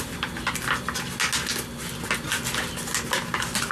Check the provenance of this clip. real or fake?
real